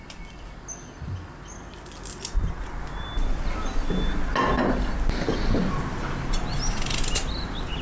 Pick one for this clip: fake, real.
real